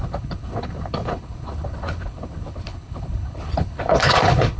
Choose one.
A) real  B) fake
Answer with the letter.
B